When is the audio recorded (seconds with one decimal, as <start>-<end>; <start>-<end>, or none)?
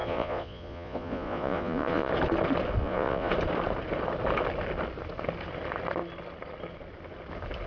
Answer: 2.1-2.8; 3.3-7.7